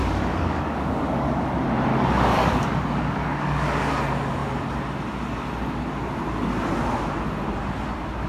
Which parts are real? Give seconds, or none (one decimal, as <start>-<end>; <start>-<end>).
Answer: 1.5-1.9; 3.9-8.3